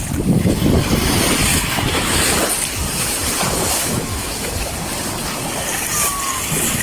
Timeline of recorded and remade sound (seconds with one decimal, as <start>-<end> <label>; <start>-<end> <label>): 0.0-1.5 recorded; 1.5-2.2 remade; 2.2-3.8 recorded; 3.8-4.7 remade; 4.7-6.8 recorded